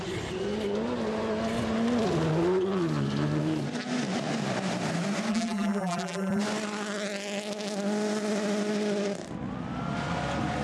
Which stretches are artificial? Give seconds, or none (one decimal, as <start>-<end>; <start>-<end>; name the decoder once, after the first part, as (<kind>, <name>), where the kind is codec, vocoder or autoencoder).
5.3-6.4 (vocoder, BigVGAN v2)